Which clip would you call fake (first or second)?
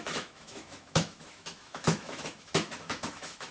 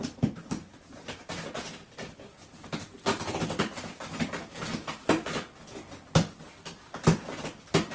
first